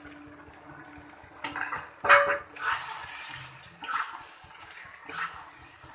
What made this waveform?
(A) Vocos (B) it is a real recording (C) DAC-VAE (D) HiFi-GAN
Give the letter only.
B